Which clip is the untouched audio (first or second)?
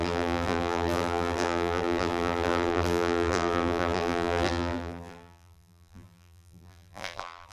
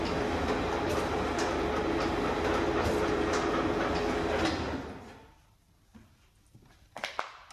second